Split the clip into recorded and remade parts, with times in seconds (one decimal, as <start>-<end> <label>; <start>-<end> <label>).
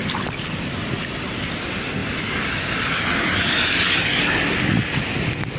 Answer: 0.0-5.6 recorded